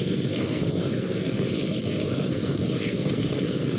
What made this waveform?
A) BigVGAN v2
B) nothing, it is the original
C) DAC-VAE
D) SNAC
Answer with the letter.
D